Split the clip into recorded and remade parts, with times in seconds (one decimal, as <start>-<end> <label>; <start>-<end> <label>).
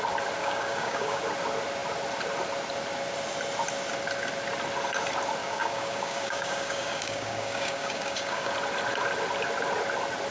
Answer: 0.0-0.4 recorded; 0.4-1.2 remade; 1.2-5.4 recorded; 5.4-8.5 remade; 8.5-10.3 recorded